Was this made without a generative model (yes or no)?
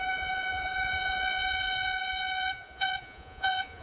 no